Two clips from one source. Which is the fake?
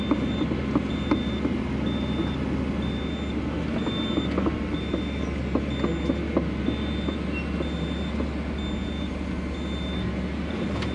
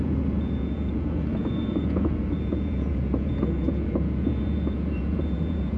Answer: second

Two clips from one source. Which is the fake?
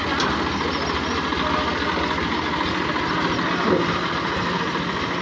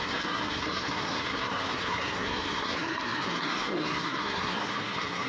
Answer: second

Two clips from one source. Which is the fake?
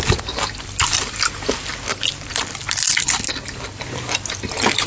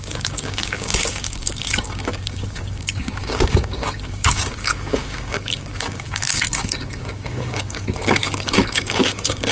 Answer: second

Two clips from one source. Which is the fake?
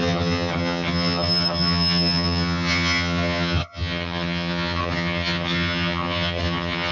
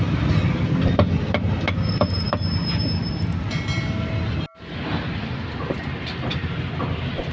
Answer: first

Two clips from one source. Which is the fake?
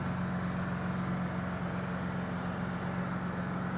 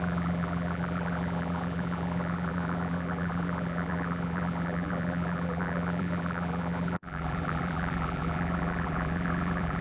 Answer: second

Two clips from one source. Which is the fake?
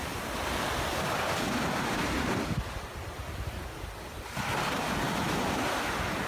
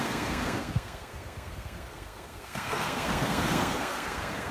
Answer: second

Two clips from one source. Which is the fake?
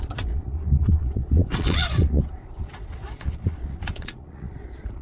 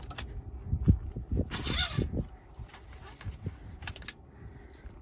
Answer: first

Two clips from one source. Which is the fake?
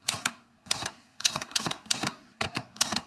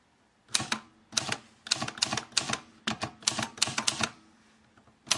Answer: first